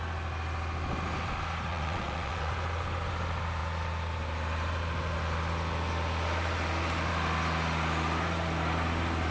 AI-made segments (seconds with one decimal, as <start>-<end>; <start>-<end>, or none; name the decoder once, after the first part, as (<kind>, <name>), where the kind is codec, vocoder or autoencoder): 1.7-2.5 (vocoder, WaveNeXt)